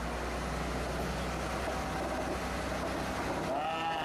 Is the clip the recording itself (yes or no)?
yes